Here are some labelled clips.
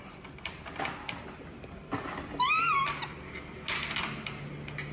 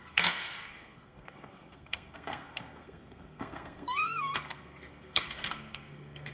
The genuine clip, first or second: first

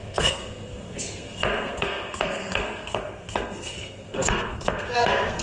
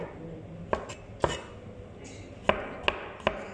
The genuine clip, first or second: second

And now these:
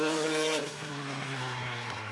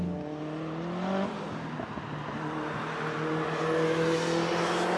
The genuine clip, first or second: second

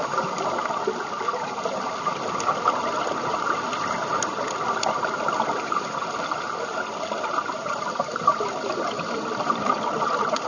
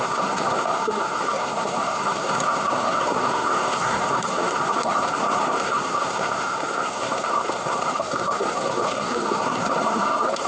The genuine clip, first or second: first